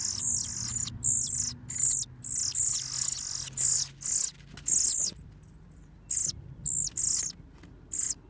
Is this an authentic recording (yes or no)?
yes